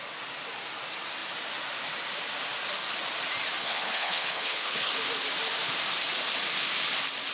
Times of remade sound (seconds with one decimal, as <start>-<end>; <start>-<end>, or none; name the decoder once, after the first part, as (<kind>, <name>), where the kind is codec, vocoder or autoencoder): 3.6-4.9 (codec, HILCodec)